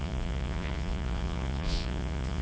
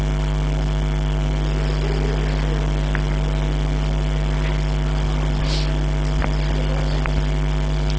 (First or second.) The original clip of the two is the second